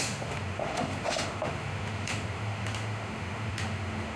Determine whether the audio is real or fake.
fake